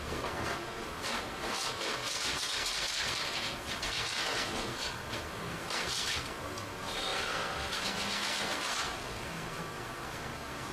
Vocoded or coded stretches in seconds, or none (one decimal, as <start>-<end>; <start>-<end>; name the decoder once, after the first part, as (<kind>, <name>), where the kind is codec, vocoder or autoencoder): 0.0-10.7 (codec, SNAC)